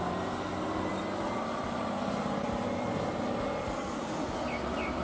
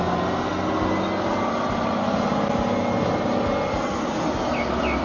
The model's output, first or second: first